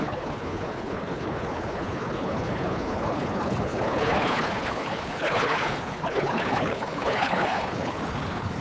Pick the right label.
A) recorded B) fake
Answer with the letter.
B